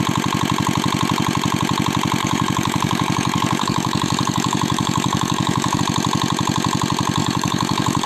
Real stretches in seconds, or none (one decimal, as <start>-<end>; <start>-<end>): 0.0-2.2; 5.8-7.2